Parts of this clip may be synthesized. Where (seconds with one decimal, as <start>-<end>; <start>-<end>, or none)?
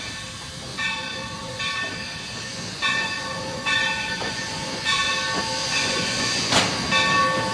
0.7-1.6; 2.5-5.1; 5.6-6.6